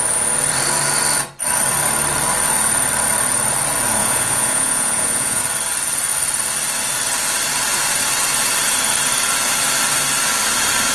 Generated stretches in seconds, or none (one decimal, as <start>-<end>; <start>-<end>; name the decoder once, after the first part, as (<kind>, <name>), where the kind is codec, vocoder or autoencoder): 4.0-5.4 (vocoder, Vocos)